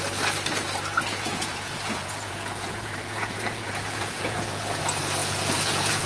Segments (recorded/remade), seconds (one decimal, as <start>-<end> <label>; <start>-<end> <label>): 0.0-1.1 recorded; 1.1-4.8 remade; 4.8-5.2 recorded; 5.2-6.1 remade